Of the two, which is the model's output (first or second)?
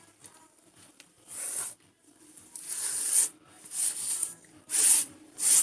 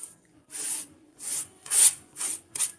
second